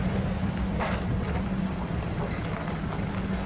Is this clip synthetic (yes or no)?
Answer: no